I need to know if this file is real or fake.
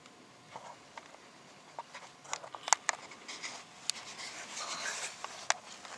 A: real